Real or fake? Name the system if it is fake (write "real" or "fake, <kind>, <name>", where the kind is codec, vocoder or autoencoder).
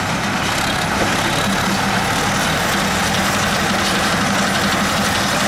real